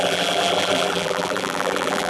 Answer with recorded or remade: remade